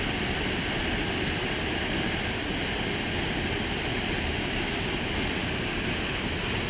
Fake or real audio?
real